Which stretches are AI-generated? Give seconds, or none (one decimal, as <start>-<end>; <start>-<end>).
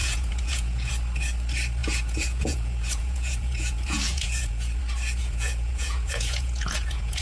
0.0-0.9; 1.8-4.8; 5.2-7.2